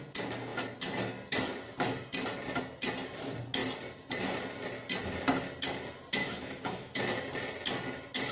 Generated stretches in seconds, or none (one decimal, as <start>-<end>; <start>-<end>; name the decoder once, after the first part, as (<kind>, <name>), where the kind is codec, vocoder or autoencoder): 6.2-7.0 (autoencoder, DAC-VAE)